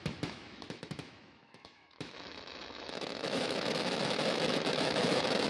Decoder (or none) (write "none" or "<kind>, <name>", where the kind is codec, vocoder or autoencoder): autoencoder, DAC-VAE